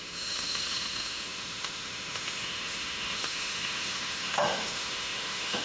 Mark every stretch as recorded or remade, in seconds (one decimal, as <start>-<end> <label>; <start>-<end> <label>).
0.0-5.6 remade